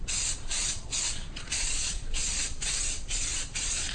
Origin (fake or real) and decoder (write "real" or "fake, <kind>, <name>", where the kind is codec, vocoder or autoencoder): fake, vocoder, Vocos